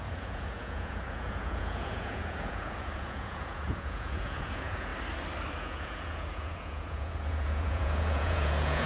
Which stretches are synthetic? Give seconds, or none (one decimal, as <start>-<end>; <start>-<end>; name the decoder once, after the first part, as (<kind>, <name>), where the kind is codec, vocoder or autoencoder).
0.0-4.9 (vocoder, Vocos); 5.6-8.9